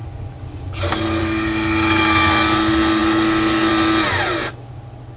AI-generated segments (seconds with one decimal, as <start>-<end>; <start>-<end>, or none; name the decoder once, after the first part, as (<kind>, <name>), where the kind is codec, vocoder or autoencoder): none